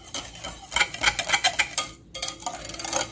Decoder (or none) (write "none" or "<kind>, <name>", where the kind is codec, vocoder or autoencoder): none